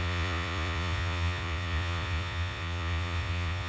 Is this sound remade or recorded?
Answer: remade